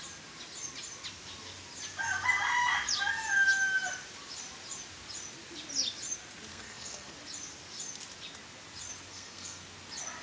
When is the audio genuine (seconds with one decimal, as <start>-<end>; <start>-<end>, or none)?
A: 0.0-6.5; 7.1-9.1; 9.6-10.2